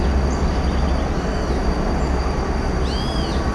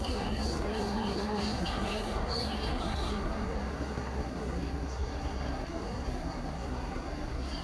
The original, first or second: first